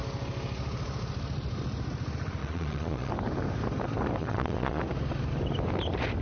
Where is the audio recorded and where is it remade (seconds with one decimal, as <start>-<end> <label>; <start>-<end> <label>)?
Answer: 0.0-2.4 recorded; 2.4-3.1 remade; 3.1-4.2 recorded; 4.2-4.8 remade; 4.8-6.2 recorded